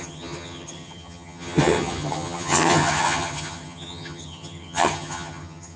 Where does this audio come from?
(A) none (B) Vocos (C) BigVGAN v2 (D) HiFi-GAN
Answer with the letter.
D